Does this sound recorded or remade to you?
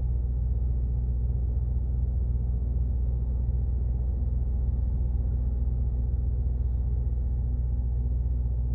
remade